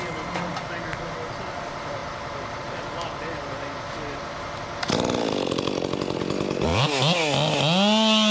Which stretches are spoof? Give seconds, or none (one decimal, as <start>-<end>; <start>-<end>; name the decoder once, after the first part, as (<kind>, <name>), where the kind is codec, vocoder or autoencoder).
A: none